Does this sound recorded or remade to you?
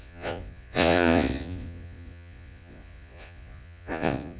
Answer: remade